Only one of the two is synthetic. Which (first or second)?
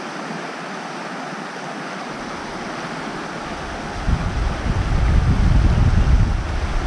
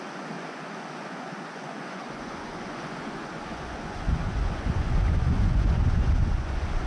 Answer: second